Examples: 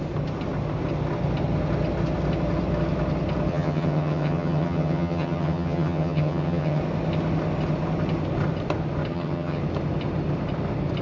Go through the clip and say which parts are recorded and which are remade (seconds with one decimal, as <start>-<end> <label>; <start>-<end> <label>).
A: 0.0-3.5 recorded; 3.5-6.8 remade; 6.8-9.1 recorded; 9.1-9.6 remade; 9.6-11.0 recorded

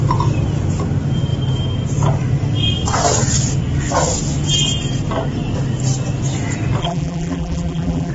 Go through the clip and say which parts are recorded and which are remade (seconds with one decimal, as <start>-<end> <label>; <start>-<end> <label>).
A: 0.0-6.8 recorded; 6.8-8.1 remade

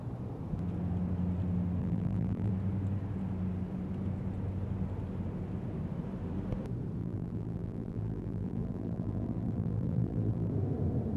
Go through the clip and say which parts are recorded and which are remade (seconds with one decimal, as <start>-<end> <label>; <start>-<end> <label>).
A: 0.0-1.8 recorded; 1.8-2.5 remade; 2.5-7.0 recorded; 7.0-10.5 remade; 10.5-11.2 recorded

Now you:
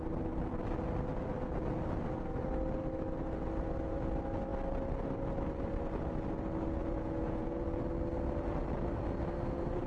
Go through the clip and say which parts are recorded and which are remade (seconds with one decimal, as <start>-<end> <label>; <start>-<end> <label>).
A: 0.0-6.8 recorded; 6.8-7.6 remade; 7.6-9.9 recorded

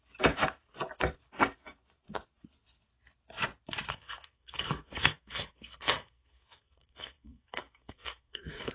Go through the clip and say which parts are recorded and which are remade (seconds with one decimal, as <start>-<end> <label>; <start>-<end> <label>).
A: 0.0-3.9 recorded; 3.9-8.7 remade